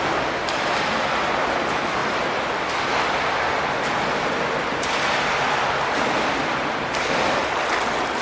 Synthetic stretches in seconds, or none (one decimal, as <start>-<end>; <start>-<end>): none